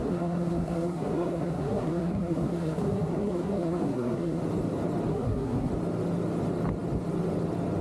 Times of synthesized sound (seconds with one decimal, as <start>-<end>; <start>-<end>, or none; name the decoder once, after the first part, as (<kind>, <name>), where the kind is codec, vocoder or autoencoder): 0.0-4.4 (codec, SNAC); 5.1-5.7